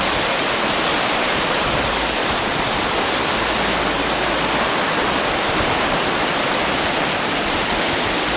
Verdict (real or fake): real